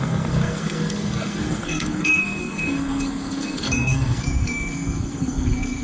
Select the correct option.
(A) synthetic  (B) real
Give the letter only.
A